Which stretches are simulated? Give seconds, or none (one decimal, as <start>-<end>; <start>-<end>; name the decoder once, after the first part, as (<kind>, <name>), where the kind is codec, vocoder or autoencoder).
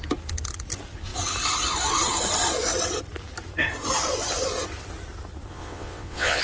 5.5-6.4 (vocoder, WaveNeXt)